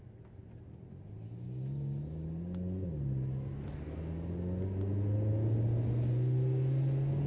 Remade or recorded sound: recorded